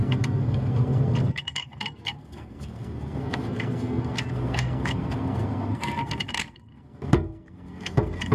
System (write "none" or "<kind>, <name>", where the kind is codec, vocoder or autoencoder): codec, SNAC